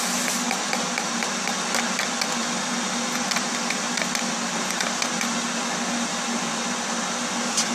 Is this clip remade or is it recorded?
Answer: recorded